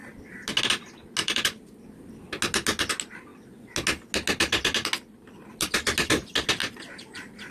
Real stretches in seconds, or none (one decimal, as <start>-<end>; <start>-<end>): 0.0-1.2; 1.8-6.6